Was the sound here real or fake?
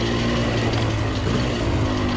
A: real